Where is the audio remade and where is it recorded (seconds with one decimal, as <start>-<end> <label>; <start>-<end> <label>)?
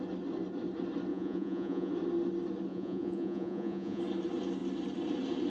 0.0-1.1 recorded; 1.1-1.9 remade; 1.9-2.7 recorded; 2.7-4.0 remade; 4.0-5.5 recorded